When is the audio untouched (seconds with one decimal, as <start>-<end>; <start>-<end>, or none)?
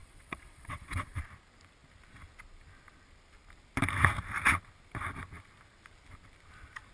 1.2-6.9